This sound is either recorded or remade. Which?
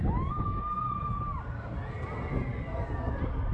recorded